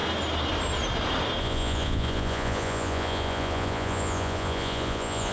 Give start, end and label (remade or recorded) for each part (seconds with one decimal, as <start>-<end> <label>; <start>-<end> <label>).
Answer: 0.0-1.4 recorded; 1.4-5.3 remade